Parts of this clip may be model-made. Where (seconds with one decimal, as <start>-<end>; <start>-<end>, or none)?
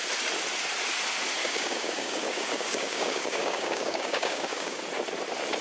1.4-4.8